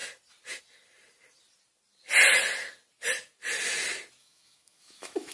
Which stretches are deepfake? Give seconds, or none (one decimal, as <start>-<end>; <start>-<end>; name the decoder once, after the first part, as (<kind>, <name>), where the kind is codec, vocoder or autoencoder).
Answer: 4.2-5.3 (autoencoder, DAC-VAE)